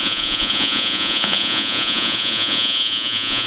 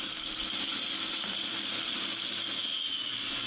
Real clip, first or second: second